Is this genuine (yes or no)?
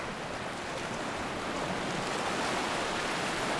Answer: yes